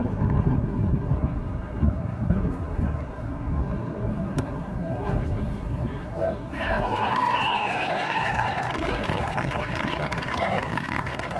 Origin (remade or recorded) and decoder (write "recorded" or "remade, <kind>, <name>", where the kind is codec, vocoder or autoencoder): remade, codec, SNAC